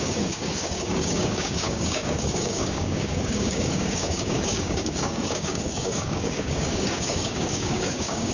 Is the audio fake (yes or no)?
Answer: yes